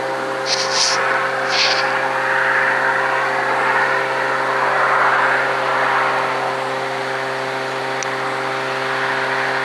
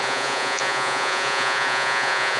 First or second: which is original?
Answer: first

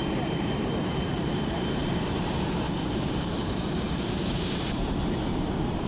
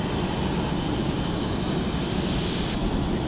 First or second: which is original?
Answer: second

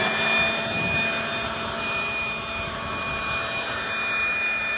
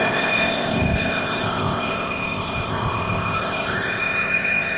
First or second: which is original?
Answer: first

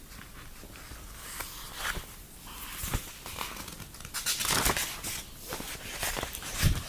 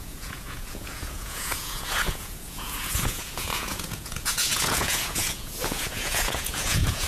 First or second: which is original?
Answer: first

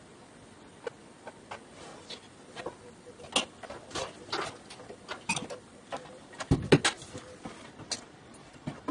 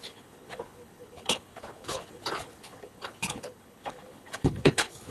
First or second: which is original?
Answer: first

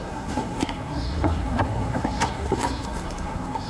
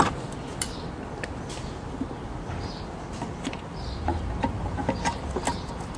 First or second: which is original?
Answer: second